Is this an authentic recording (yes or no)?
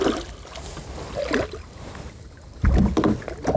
yes